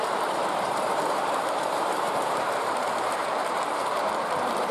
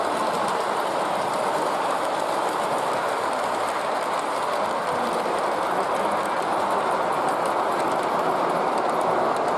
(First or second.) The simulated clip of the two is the first